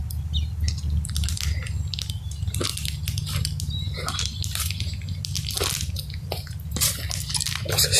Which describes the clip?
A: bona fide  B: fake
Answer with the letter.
A